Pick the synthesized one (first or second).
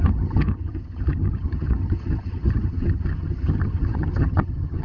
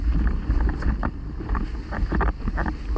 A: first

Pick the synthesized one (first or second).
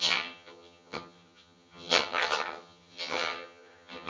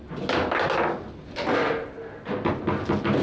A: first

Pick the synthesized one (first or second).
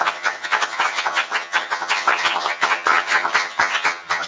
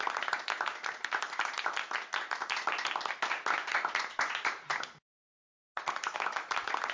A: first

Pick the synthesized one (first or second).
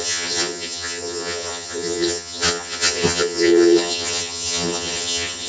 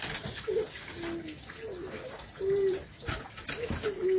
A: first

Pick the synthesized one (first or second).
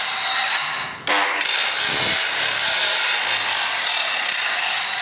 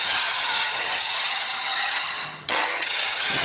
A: second